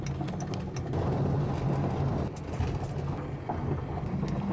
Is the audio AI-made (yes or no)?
no